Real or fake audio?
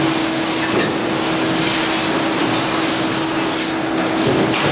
real